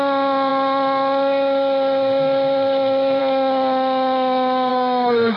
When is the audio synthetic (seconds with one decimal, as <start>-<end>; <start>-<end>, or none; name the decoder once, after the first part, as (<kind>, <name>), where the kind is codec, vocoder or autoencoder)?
4.7-5.4 (codec, SNAC)